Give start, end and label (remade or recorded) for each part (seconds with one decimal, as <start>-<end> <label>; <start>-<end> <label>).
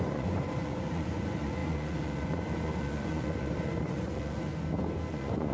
0.0-4.5 remade; 4.5-5.1 recorded; 5.1-5.5 remade